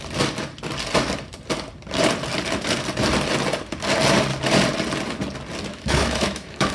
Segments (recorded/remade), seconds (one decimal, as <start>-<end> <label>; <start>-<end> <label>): 0.0-5.7 recorded; 5.7-6.7 remade